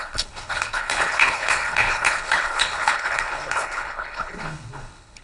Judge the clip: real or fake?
fake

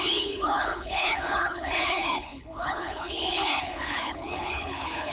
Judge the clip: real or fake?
fake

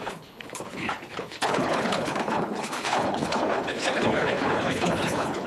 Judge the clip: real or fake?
fake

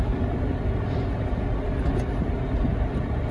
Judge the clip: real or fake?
real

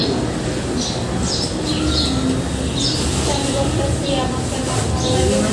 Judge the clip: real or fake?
real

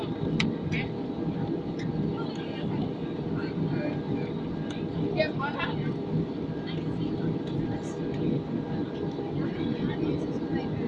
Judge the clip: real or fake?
real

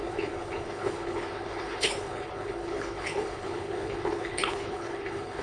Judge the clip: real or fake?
fake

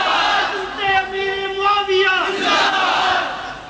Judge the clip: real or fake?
real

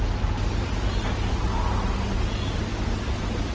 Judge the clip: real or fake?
real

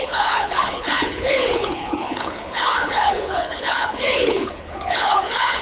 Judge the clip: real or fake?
fake